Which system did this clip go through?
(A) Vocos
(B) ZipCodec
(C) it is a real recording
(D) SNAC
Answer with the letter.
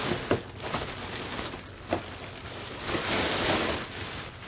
C